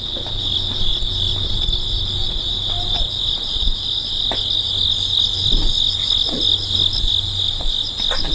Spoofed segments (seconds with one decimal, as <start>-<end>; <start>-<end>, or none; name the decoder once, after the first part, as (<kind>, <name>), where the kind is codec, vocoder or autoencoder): none